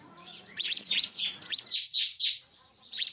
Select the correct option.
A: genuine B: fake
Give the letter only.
B